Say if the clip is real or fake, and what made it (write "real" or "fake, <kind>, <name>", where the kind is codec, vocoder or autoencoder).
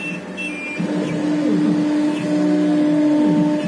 real